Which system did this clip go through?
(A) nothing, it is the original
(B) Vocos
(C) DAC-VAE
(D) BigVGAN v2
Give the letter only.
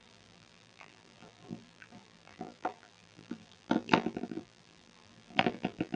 D